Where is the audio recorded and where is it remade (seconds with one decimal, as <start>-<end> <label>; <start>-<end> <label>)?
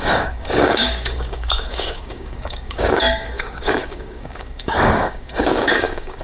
0.0-6.2 remade